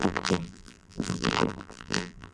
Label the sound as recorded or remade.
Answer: remade